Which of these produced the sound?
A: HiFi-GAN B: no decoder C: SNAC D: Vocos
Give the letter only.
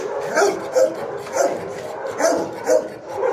B